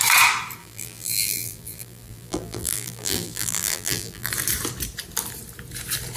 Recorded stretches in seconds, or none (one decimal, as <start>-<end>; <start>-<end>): 0.0-0.6; 4.3-6.2